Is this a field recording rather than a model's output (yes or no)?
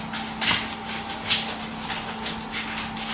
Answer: yes